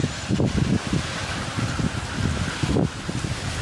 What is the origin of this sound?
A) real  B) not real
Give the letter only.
A